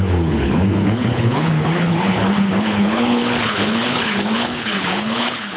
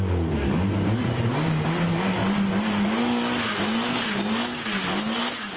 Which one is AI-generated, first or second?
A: first